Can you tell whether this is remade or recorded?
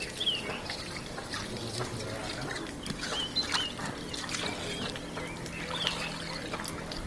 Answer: recorded